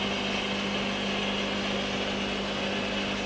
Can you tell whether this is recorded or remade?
recorded